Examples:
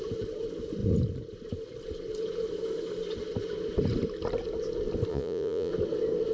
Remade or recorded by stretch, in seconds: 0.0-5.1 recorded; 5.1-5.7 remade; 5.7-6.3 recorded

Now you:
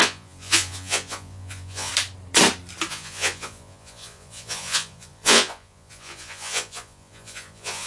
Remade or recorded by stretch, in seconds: 0.0-1.9 remade; 1.9-2.9 recorded; 2.9-7.9 remade

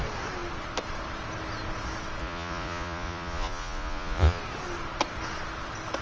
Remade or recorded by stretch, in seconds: 0.0-2.2 recorded; 2.2-4.4 remade; 4.4-6.0 recorded

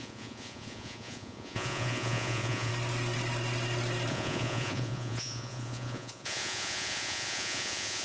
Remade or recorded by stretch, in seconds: 0.0-2.7 remade; 2.7-4.1 recorded; 4.1-8.0 remade

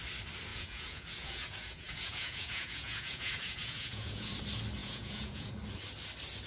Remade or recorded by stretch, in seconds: 0.0-0.5 recorded; 0.5-4.3 remade; 4.3-4.8 recorded; 4.8-5.5 remade; 5.5-6.5 recorded

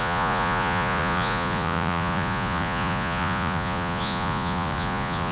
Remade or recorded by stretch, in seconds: 0.0-5.3 remade

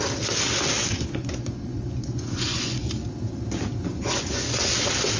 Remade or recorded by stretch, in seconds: 0.0-0.8 recorded; 0.8-2.9 remade; 2.9-3.9 recorded; 3.9-4.7 remade; 4.7-5.2 recorded